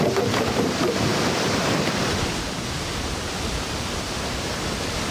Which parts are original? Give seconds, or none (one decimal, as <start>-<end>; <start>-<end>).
none

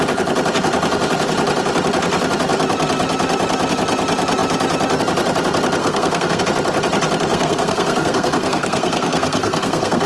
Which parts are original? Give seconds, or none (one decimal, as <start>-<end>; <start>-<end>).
0.0-5.8; 6.4-7.3

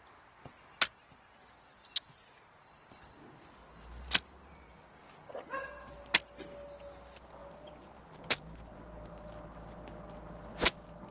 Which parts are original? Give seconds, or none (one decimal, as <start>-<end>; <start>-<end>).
0.0-11.1

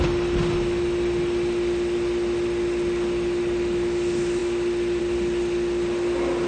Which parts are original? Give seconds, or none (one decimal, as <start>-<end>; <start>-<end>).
0.0-6.5